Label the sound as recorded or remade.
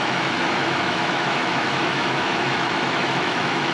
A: remade